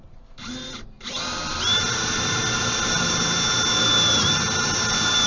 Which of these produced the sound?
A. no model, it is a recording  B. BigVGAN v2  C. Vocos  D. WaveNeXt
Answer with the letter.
A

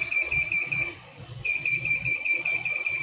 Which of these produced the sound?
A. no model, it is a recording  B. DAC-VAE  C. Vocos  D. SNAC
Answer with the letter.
C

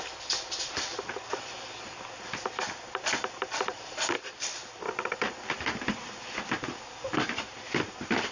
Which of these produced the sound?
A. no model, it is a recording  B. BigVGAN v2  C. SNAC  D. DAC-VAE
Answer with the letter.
B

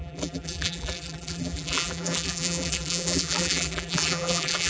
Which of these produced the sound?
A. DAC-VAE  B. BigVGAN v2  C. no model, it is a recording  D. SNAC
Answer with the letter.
B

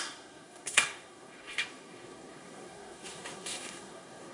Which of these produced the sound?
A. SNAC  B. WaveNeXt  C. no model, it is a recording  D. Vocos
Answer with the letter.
A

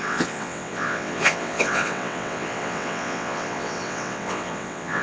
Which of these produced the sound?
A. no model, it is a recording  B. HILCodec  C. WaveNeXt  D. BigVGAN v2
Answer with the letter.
C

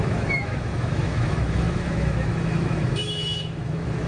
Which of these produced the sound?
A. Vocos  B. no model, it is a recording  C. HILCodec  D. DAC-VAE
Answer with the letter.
D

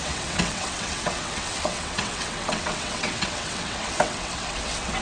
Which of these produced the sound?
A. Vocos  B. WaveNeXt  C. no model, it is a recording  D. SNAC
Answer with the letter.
B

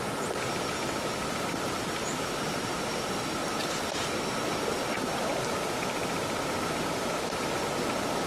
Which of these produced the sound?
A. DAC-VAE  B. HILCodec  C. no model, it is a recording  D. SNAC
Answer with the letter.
C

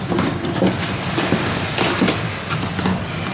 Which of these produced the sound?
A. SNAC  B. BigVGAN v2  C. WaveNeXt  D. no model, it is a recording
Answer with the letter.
D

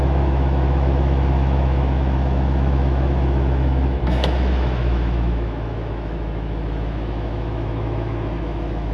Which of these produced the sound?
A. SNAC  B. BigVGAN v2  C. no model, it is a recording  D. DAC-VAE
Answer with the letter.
D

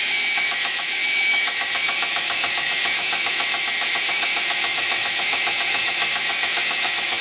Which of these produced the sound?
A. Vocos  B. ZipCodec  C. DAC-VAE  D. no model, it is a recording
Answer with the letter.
C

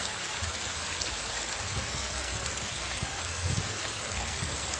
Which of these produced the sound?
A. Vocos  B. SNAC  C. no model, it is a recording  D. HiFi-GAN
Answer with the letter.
B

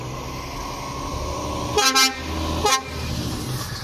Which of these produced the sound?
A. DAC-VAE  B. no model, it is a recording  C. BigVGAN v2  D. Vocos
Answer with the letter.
B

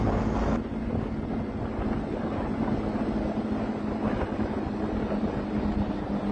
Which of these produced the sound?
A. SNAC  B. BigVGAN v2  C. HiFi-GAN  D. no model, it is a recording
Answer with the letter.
D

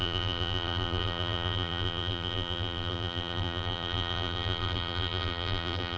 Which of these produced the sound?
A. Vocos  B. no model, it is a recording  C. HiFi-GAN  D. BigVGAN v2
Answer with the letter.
D